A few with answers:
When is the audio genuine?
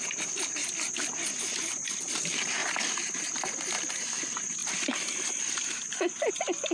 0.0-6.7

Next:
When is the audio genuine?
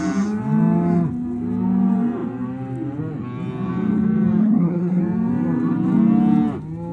0.0-4.4; 5.0-6.9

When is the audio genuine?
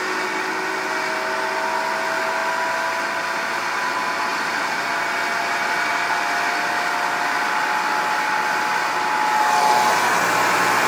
0.0-4.3; 4.9-10.9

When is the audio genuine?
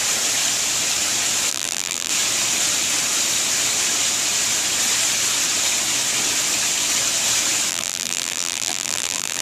0.0-1.5; 2.1-7.7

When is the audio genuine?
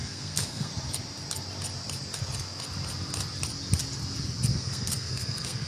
0.7-4.5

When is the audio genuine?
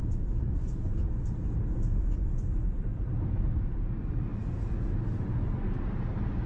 0.0-6.5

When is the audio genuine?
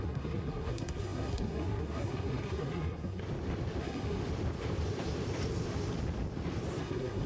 3.2-3.8; 4.2-6.8